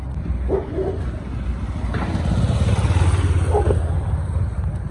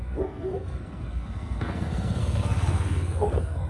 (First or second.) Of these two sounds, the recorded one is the first